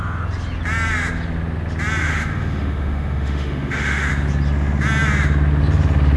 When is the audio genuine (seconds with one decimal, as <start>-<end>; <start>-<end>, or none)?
0.0-2.0; 4.1-6.2